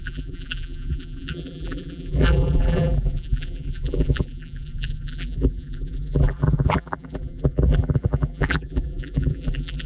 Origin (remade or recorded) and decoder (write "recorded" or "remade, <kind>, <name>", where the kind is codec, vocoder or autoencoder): remade, vocoder, BigVGAN v2